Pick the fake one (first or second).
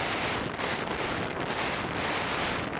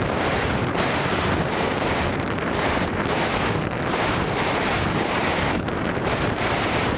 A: second